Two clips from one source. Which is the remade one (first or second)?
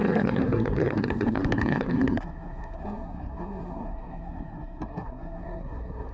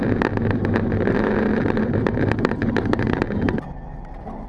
first